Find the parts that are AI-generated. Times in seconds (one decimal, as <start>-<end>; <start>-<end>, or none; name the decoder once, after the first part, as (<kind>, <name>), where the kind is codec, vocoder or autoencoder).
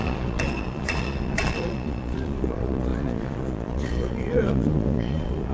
0.0-5.5 (vocoder, Vocos)